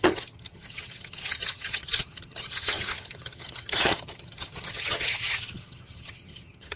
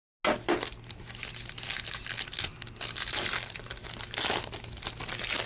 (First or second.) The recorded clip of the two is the second